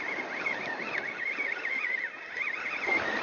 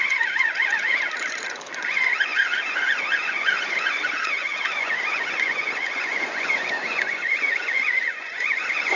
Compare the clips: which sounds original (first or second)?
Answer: first